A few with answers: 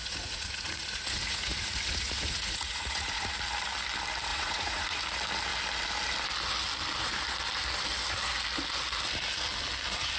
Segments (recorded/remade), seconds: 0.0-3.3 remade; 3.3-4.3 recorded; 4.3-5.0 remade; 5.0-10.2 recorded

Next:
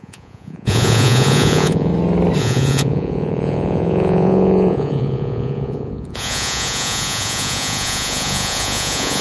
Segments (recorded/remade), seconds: 0.0-1.9 remade; 1.9-2.4 recorded; 2.4-9.2 remade

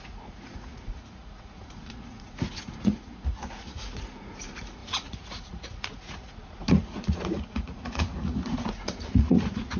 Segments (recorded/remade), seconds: 0.0-9.8 remade

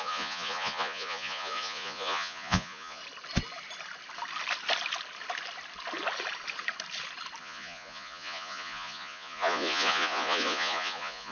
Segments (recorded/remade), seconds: 0.0-3.0 remade; 3.0-7.4 recorded; 7.4-11.3 remade

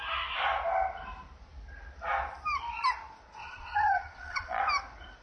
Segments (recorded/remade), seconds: 0.0-3.4 recorded; 3.4-4.6 remade; 4.6-5.2 recorded

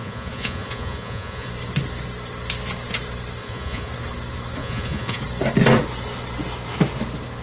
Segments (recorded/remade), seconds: 0.0-1.5 remade; 1.5-3.4 recorded; 3.4-3.9 remade; 3.9-4.6 recorded; 4.6-5.2 remade; 5.2-7.4 recorded